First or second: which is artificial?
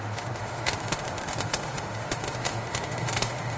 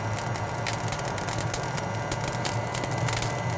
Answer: first